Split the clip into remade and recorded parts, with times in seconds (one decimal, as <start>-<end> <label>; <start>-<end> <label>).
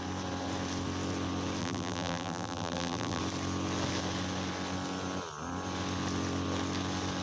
0.0-1.6 recorded; 1.6-3.2 remade; 3.2-7.2 recorded